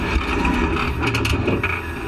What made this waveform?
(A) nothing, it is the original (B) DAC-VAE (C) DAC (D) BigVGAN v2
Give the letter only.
A